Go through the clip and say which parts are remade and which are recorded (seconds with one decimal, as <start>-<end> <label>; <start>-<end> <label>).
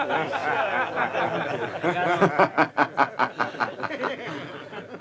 0.0-5.0 recorded